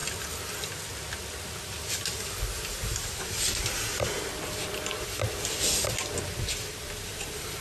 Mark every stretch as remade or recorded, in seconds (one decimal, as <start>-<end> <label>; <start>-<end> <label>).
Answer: 0.0-7.6 recorded